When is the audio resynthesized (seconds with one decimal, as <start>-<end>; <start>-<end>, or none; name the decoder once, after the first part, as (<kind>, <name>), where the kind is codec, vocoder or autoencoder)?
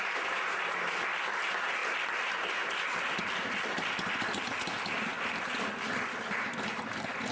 none